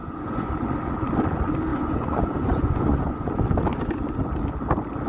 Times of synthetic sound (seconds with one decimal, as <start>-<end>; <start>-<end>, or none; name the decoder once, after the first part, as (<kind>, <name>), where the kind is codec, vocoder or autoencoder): 0.0-0.5 (vocoder, Vocos); 1.7-3.4